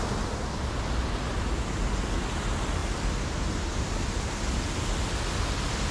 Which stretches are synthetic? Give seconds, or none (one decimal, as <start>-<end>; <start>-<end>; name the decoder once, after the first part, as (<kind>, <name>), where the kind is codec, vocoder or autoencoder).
2.8-3.9 (vocoder, BigVGAN v2)